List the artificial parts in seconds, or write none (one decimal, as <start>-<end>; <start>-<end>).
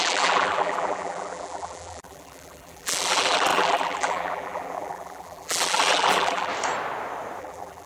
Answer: 0.0-6.5; 7.4-7.9